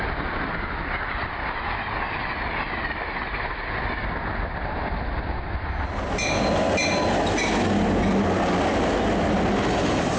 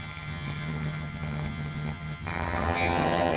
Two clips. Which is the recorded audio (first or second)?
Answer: first